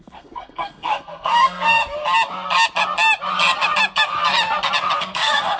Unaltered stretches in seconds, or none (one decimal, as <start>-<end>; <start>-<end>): 1.8-5.0